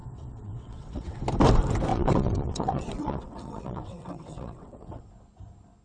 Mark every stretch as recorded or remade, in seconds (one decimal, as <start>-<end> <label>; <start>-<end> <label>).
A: 0.0-1.2 remade; 1.2-1.9 recorded; 1.9-5.0 remade; 5.0-5.8 recorded